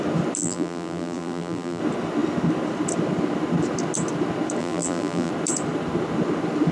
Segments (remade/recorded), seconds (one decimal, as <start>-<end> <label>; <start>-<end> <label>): 0.0-0.4 recorded; 0.4-1.8 remade; 1.8-4.6 recorded; 4.6-5.3 remade; 5.3-6.7 recorded